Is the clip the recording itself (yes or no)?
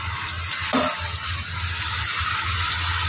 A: yes